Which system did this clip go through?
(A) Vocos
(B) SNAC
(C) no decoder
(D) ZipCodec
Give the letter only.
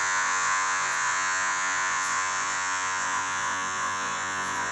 A